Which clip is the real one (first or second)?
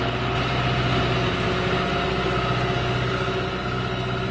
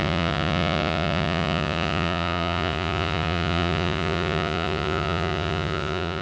first